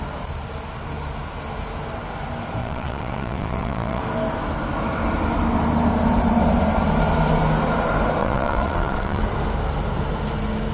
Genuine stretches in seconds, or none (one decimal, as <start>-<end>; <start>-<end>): 0.0-2.6; 4.0-8.2; 9.2-10.7